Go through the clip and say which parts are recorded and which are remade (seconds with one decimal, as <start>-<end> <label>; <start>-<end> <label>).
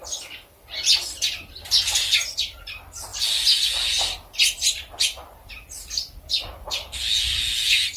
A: 0.0-8.0 recorded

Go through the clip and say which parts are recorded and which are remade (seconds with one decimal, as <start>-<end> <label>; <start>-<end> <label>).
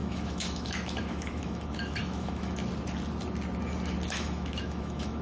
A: 0.0-2.6 remade; 2.6-4.1 recorded; 4.1-5.2 remade